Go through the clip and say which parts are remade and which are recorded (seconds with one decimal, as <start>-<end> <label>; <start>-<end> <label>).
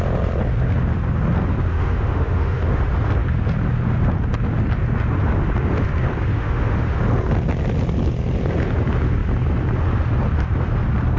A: 0.0-1.7 recorded; 1.7-2.8 remade; 2.8-6.3 recorded; 6.3-7.0 remade; 7.0-11.2 recorded